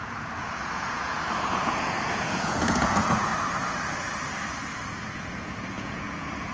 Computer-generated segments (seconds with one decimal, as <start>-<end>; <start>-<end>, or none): 0.0-3.3; 5.2-6.5